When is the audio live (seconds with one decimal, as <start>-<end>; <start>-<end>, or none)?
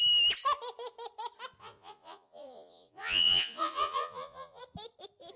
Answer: 0.0-1.6; 4.6-5.4